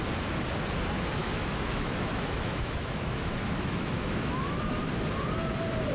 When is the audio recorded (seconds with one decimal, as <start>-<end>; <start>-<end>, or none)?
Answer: 0.0-1.2; 4.7-5.9